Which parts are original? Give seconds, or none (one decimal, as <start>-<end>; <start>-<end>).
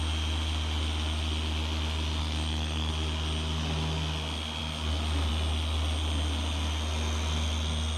0.0-2.2; 2.9-8.0